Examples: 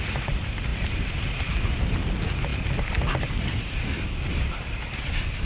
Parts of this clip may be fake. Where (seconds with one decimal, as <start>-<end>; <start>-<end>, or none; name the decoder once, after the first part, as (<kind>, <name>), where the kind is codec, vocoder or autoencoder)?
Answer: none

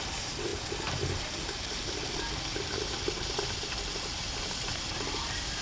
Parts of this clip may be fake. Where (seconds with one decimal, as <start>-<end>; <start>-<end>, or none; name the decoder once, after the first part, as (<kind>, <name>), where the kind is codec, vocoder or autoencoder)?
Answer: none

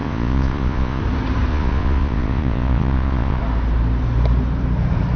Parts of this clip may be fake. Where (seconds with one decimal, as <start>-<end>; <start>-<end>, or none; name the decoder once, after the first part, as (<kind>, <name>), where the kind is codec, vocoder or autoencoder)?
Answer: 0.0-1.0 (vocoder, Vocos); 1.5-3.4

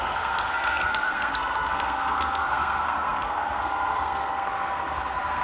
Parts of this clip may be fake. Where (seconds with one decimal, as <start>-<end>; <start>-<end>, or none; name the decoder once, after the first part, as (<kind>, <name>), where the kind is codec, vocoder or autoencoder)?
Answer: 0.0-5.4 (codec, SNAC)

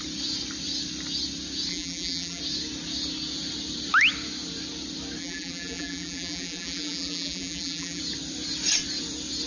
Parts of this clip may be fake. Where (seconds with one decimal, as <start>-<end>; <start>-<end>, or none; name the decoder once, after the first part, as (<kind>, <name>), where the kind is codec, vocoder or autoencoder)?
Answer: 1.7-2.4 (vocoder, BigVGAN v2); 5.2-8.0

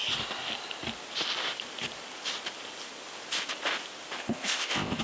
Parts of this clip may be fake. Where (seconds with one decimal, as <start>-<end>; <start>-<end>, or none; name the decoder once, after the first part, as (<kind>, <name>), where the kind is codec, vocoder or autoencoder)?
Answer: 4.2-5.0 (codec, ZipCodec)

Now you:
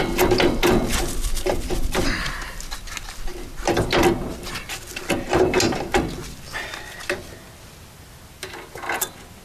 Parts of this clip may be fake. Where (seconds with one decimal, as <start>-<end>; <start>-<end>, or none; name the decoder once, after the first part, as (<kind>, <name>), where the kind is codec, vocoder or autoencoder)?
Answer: none